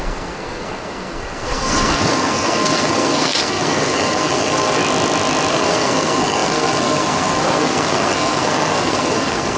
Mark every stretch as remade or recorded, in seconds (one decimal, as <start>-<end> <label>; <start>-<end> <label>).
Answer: 0.0-4.8 remade; 4.8-5.5 recorded; 5.5-9.6 remade